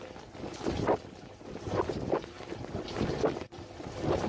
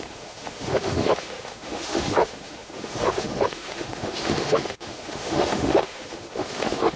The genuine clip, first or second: first